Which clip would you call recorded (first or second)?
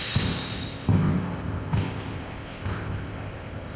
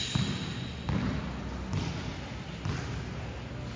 second